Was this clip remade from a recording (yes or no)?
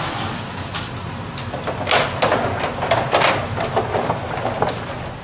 no